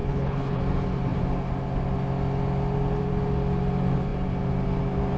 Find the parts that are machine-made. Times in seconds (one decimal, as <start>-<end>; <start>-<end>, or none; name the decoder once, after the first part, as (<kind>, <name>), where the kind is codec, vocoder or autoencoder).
0.0-0.6 (codec, HILCodec)